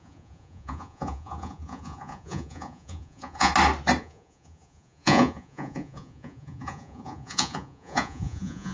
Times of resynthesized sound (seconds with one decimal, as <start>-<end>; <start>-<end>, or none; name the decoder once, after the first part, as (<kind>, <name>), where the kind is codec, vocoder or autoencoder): 0.0-3.5 (vocoder, Vocos); 4.0-8.7